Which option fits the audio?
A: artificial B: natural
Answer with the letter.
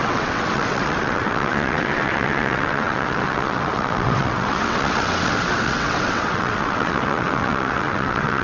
A